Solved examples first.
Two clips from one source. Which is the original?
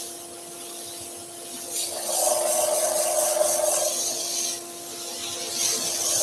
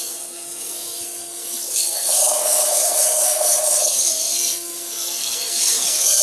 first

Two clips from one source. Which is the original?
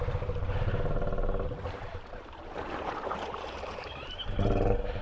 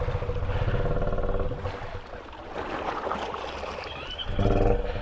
second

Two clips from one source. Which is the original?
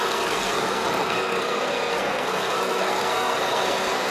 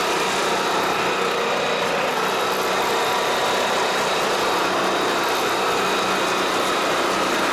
second